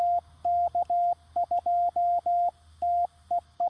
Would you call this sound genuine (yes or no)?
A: yes